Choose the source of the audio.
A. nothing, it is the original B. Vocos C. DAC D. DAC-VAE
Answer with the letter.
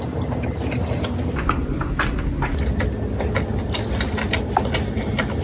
A